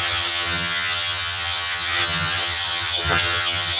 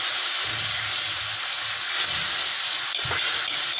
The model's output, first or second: first